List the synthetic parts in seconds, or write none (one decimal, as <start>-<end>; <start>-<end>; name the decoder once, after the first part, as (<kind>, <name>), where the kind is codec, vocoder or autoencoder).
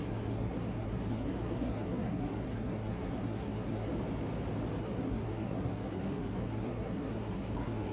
0.0-3.9 (codec, SNAC); 4.8-7.9